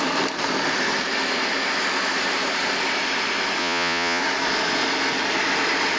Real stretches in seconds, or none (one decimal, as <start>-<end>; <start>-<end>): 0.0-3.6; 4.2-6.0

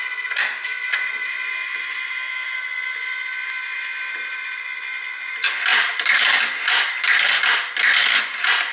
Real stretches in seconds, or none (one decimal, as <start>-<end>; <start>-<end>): 0.0-5.7; 7.4-8.7

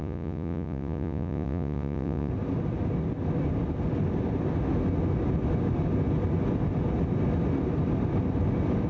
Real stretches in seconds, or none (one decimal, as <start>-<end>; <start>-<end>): 2.3-8.9